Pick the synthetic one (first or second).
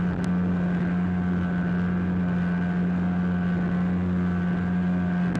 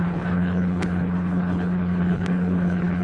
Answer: second